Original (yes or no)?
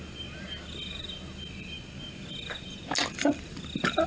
yes